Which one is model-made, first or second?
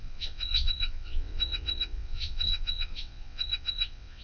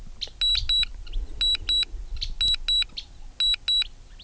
first